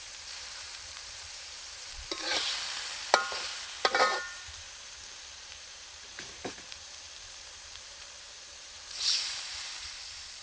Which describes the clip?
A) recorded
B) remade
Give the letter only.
B